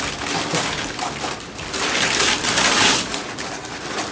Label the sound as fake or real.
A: fake